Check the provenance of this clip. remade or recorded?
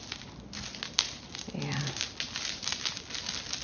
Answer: recorded